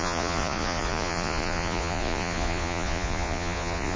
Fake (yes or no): yes